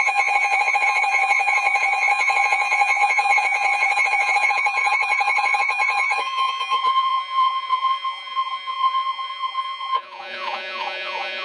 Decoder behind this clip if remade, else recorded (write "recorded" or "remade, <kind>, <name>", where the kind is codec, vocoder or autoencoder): remade, vocoder, Vocos